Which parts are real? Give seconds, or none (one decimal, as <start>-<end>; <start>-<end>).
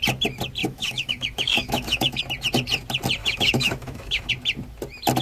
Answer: 0.0-0.6; 2.2-3.2; 4.3-5.2